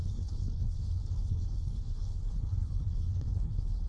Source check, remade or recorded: remade